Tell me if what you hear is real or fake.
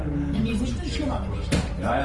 real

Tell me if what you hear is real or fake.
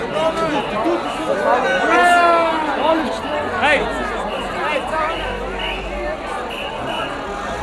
real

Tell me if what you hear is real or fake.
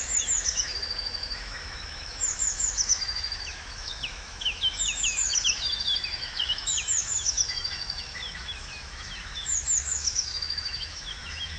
fake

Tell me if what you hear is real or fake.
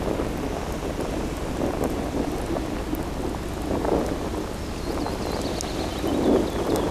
real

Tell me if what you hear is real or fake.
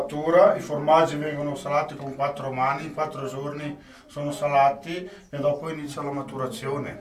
real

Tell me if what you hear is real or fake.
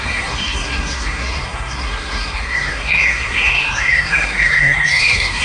fake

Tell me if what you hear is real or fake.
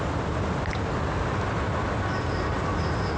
real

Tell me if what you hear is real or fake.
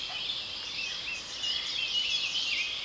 real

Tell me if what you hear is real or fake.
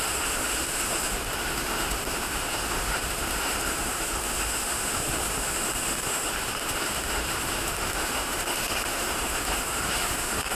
fake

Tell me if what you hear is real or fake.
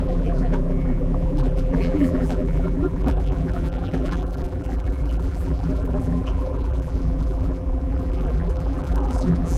fake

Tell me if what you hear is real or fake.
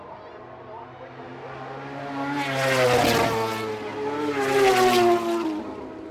real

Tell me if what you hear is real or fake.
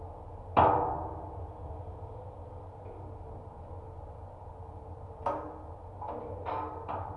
real